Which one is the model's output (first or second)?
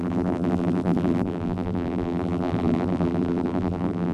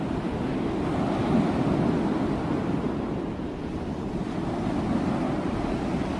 first